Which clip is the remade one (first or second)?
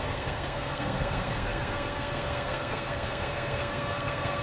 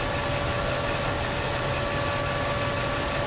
first